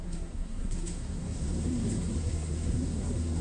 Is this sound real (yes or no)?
no